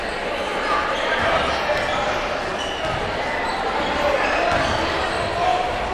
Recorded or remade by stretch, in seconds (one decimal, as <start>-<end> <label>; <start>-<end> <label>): 0.0-0.5 recorded; 0.5-1.7 remade; 1.7-5.9 recorded